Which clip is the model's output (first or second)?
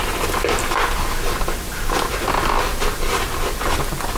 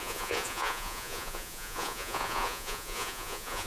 second